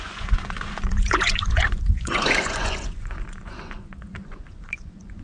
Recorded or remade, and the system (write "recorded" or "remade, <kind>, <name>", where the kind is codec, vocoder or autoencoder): remade, vocoder, Vocos